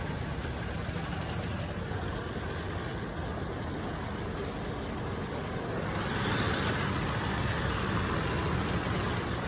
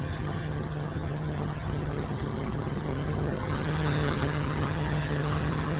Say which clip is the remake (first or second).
second